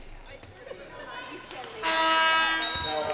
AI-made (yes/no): no